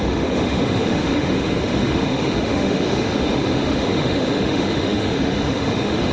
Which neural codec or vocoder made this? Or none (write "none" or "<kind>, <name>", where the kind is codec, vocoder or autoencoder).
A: autoencoder, DAC-VAE